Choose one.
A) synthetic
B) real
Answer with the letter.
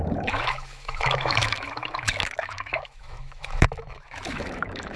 A